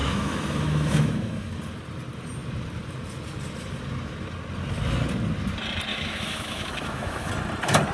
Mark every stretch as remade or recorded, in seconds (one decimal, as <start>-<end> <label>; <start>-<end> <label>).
0.0-1.5 remade; 1.5-5.9 recorded; 5.9-7.3 remade; 7.3-7.9 recorded